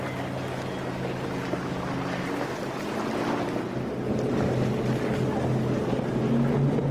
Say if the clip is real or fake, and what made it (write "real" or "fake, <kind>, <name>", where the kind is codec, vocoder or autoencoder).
real